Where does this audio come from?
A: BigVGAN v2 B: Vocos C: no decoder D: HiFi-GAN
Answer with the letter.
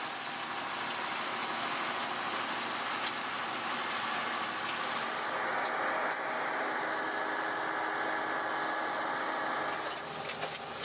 C